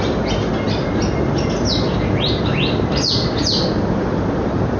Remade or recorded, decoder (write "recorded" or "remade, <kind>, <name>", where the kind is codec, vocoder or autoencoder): recorded